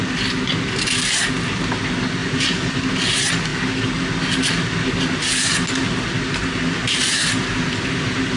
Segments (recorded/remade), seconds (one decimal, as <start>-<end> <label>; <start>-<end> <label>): 0.0-2.2 recorded; 2.2-2.8 remade; 2.8-8.4 recorded